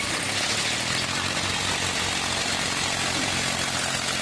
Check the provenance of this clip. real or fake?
real